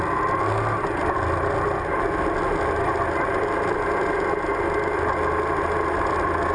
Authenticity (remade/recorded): recorded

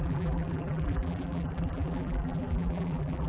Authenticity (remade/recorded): remade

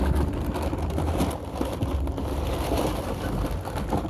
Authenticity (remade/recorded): recorded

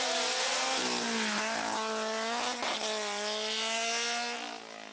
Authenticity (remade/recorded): recorded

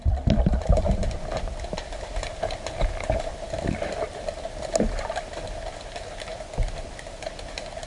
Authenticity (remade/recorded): recorded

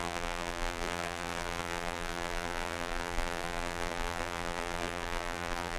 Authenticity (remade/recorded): remade